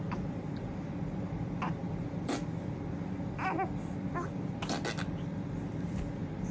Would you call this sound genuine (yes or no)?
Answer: yes